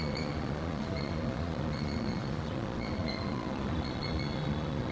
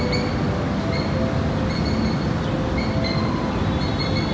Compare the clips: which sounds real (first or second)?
second